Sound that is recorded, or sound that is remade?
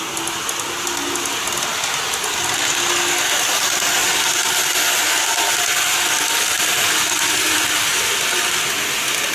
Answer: recorded